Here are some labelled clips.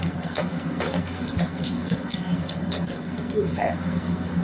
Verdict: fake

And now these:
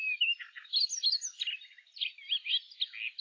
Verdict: real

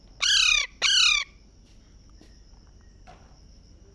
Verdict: real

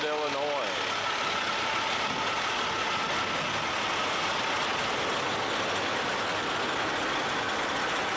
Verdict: real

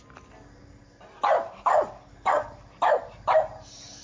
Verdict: real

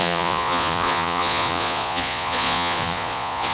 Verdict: fake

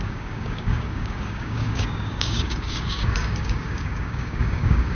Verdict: fake